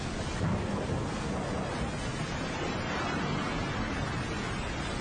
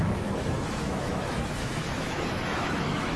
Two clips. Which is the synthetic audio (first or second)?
second